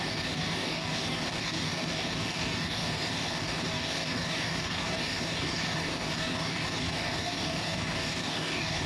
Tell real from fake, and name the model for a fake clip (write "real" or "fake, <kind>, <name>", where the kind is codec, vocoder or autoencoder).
fake, codec, DAC